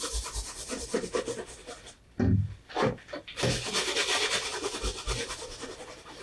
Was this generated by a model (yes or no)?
no